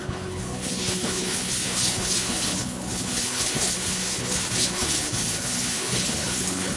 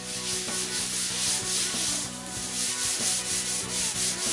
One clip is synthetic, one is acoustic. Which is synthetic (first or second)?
first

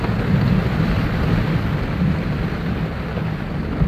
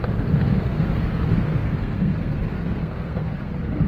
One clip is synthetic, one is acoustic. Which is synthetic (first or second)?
second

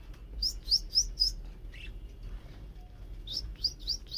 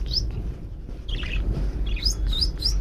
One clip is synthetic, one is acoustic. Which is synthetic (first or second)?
second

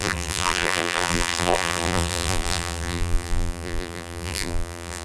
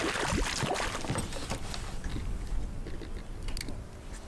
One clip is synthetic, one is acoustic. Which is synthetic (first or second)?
first